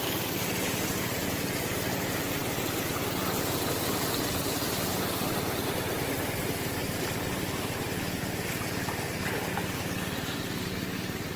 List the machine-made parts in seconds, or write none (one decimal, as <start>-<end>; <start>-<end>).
6.8-8.2